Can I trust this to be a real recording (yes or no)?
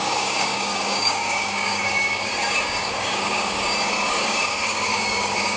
no